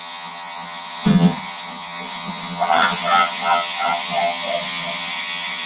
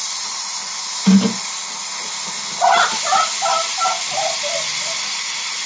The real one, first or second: second